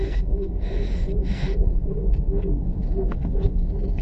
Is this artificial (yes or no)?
yes